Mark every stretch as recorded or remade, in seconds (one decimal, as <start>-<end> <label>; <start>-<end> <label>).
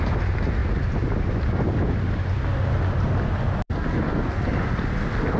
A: 0.0-0.6 recorded; 0.6-1.1 remade; 1.1-5.4 recorded